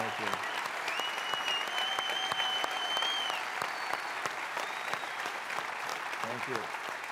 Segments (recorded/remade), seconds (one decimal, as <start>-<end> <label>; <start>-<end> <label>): 0.0-4.4 recorded; 4.4-5.5 remade; 5.5-5.9 recorded; 5.9-7.1 remade